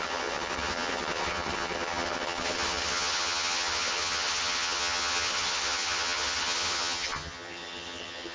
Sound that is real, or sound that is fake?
fake